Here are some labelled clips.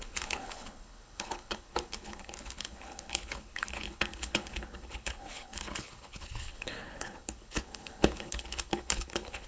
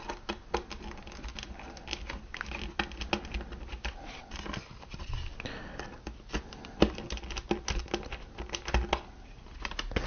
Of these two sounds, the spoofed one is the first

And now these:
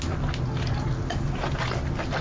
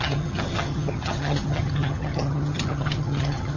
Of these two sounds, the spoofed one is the second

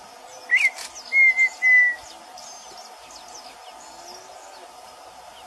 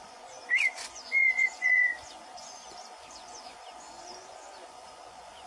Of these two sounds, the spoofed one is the second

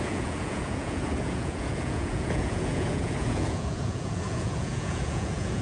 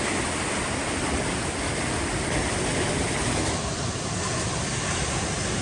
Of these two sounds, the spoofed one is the first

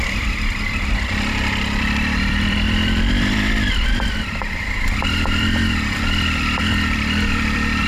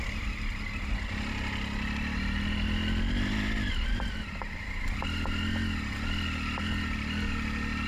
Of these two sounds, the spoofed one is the first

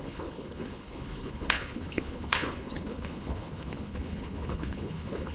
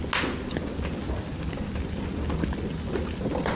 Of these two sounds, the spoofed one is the first